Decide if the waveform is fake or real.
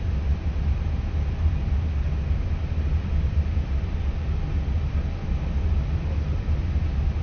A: real